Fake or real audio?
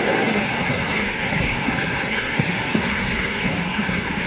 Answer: fake